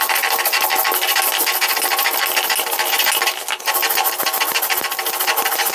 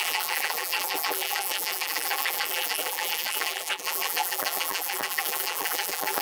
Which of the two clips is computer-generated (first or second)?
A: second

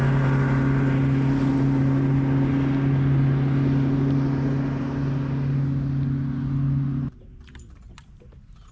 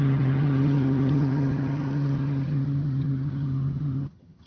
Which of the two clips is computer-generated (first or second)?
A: second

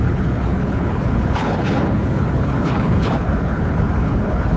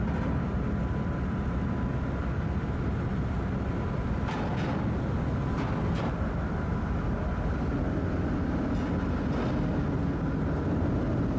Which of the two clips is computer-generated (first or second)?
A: first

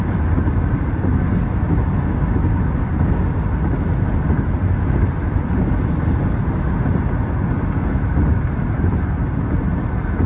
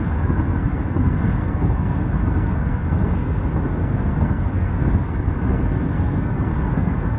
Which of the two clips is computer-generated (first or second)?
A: second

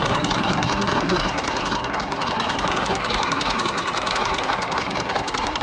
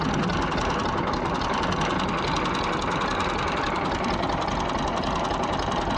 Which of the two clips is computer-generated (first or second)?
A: first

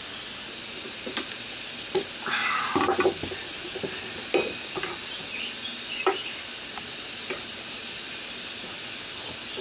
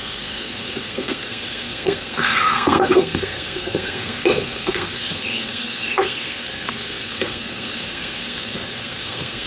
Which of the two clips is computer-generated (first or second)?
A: second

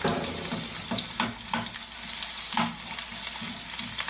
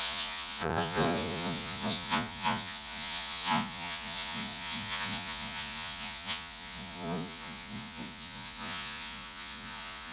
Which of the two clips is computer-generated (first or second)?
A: second